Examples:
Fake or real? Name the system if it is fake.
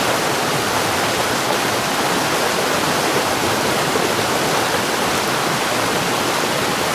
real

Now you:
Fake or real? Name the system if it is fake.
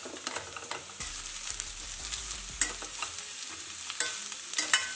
real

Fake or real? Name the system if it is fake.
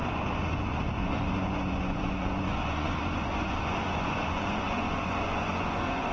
fake, vocoder, Vocos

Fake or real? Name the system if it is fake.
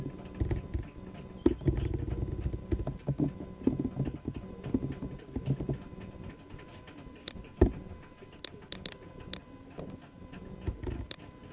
real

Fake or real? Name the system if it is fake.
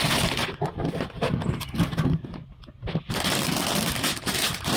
real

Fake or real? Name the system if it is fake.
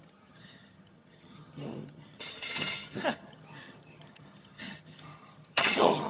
fake, vocoder, HiFi-GAN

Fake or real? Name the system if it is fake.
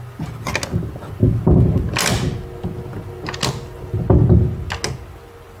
real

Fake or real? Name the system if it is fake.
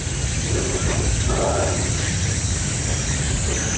real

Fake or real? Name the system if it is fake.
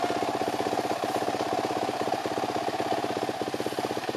real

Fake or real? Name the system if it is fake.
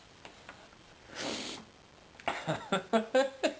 real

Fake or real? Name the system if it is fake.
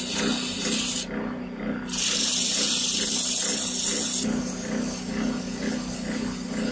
real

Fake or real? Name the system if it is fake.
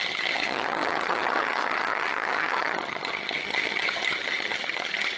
fake, vocoder, HiFi-GAN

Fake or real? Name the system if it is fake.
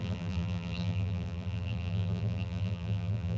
fake, vocoder, BigVGAN v2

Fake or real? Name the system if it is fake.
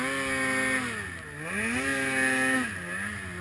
real